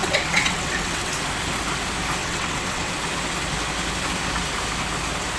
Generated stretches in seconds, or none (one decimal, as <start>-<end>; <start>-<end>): 0.0-1.1; 2.2-2.9